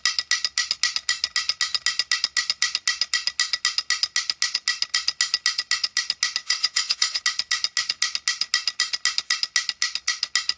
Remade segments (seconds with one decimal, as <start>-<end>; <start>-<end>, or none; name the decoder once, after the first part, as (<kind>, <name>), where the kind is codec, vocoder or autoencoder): 6.4-7.2 (vocoder, WaveNeXt)